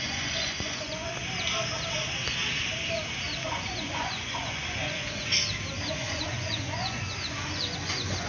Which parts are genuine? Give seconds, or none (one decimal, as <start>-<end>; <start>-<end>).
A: 1.2-3.5; 5.3-5.9